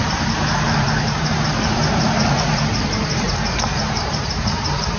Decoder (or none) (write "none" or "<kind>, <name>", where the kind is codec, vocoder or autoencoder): vocoder, BigVGAN v2